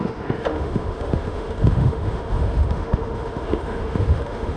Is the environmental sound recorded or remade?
remade